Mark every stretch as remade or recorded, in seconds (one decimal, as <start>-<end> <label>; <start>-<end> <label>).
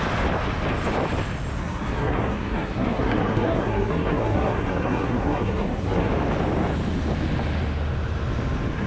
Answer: 0.0-1.6 recorded; 1.6-6.1 remade; 6.1-8.9 recorded